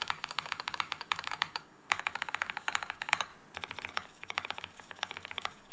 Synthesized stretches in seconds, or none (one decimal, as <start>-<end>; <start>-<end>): 0.0-3.3; 3.9-5.7